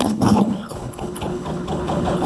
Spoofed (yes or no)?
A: yes